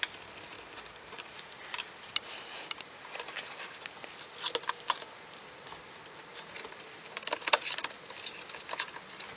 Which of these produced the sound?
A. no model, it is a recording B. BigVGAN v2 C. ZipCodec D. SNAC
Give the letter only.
A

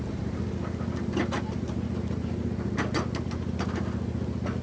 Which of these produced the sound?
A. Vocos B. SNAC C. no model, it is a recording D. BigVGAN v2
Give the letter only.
C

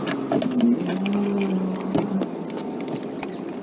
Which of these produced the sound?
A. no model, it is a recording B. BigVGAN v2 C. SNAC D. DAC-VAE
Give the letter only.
A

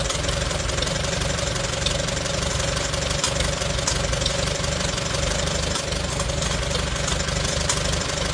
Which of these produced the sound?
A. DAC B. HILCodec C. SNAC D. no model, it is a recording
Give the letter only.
D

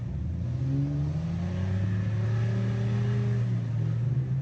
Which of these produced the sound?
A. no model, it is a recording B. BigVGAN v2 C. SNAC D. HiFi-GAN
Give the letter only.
A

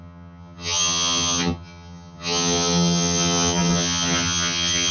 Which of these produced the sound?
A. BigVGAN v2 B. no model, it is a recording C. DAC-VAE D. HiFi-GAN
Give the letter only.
D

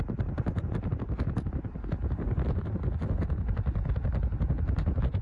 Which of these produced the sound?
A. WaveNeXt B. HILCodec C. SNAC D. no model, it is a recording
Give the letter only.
D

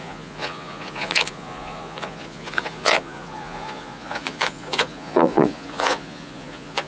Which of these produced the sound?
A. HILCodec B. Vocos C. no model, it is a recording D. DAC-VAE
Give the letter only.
B